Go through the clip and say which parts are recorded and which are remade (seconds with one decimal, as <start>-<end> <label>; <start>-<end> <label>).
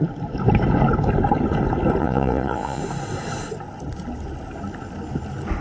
0.0-2.0 recorded; 2.0-2.8 remade; 2.8-5.6 recorded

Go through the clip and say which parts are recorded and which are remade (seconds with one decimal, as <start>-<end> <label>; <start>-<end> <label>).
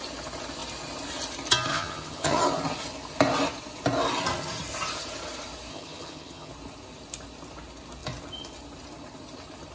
0.0-1.7 recorded; 1.7-2.4 remade; 2.4-5.7 recorded; 5.7-6.5 remade; 6.5-9.7 recorded